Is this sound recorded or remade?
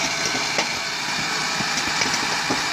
recorded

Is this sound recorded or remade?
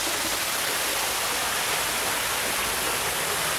recorded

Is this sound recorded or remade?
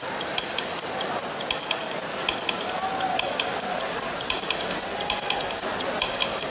recorded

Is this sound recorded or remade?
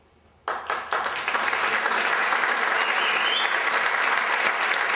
recorded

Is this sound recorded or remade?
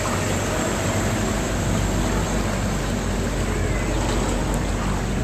recorded